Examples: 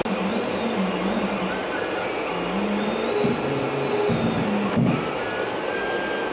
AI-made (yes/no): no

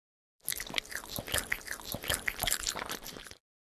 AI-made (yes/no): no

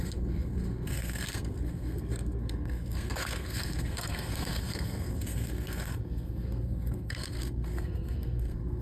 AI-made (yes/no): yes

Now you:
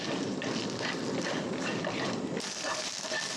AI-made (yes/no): no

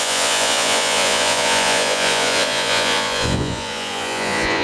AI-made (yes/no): yes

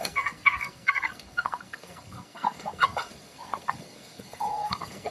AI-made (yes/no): yes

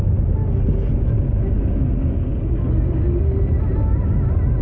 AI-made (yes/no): no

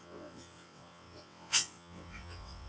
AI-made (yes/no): yes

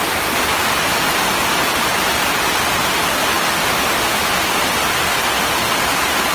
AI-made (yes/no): no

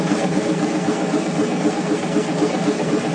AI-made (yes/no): yes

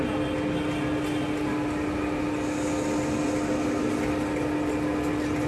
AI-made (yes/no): no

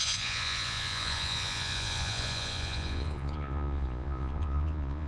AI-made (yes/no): yes